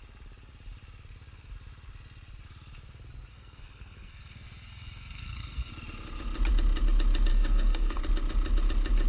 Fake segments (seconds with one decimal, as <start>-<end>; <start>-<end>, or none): 3.3-5.7; 7.3-8.0